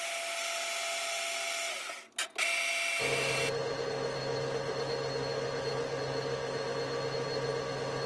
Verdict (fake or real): real